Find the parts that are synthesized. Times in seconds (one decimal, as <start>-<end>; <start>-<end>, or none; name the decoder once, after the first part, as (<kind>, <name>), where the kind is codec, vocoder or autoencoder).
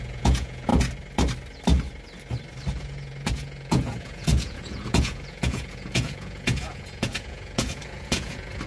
0.0-0.7 (vocoder, Vocos); 2.7-8.7